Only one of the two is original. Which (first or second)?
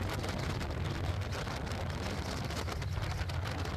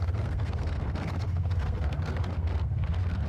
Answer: first